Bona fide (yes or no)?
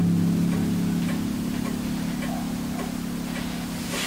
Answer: yes